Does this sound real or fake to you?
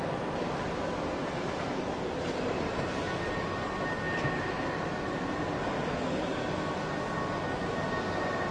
real